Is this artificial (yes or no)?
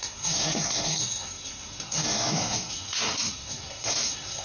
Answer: yes